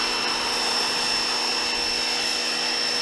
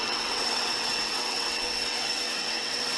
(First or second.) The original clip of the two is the first